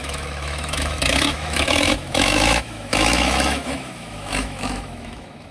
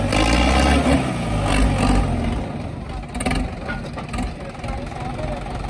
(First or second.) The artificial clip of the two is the first